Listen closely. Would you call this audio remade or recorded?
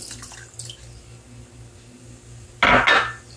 recorded